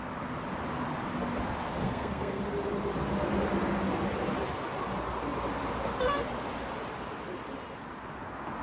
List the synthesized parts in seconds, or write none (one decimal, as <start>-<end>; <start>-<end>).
1.8-2.4